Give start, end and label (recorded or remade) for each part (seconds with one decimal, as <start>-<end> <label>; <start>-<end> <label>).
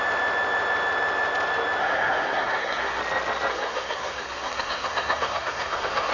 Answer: 0.0-1.8 recorded; 1.8-3.0 remade; 3.0-3.5 recorded; 3.5-6.1 remade